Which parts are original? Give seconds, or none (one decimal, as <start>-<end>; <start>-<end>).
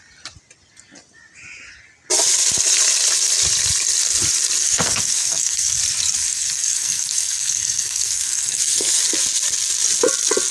0.0-4.6; 5.8-6.2; 9.0-10.5